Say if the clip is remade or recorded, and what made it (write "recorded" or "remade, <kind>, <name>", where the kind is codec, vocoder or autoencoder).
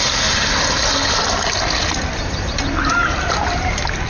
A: recorded